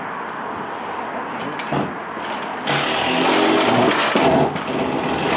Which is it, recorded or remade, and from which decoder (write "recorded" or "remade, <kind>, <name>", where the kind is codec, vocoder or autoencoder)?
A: recorded